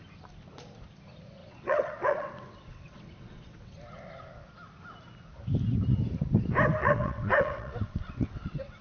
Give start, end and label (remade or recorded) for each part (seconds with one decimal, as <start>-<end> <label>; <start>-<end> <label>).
0.0-1.4 recorded; 1.4-3.7 remade; 3.7-6.8 recorded; 6.8-8.8 remade